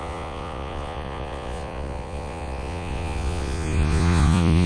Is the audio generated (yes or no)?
yes